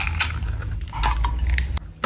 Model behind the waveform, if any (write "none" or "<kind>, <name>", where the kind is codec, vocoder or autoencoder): none